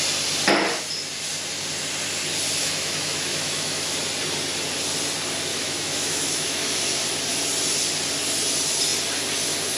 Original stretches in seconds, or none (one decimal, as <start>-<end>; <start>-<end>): 0.0-2.6; 4.0-5.5; 6.8-9.8